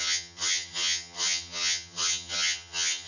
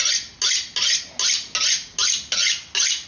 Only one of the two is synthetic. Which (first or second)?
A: first